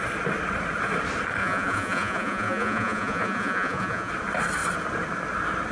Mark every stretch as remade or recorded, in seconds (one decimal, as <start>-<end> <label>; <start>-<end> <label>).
0.0-1.4 recorded; 1.4-4.1 remade; 4.1-5.7 recorded